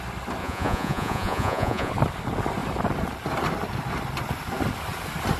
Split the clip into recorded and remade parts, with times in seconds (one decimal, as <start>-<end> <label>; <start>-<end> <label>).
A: 0.0-0.4 recorded; 0.4-1.9 remade; 1.9-5.4 recorded